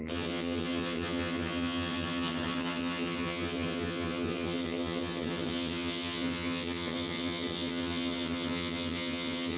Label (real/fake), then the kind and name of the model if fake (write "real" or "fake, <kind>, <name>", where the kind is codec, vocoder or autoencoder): fake, vocoder, HiFi-GAN